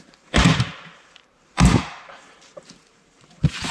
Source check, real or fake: fake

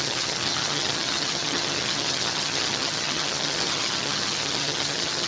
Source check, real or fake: fake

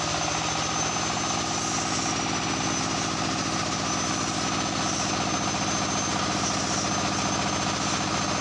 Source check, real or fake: real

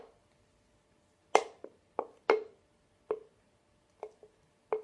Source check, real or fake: real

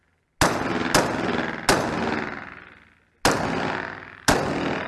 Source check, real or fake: real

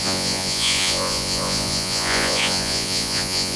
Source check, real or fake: fake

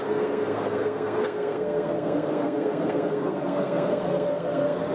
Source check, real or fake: fake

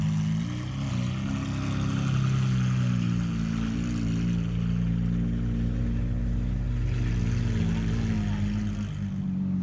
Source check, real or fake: real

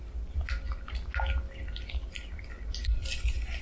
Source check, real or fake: real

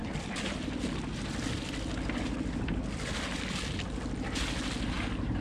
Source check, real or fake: real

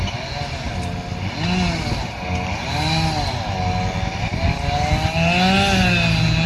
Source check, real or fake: real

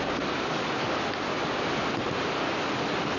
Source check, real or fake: real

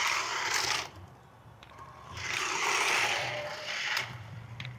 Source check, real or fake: fake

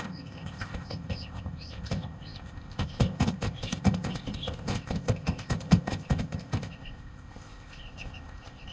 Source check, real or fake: fake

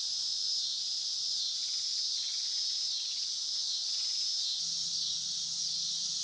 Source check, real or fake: real